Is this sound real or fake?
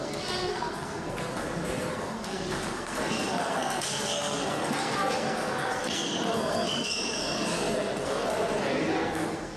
fake